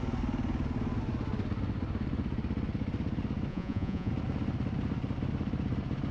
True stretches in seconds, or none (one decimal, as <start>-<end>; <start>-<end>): 0.0-3.5; 4.1-6.1